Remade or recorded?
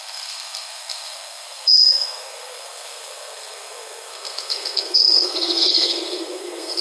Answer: remade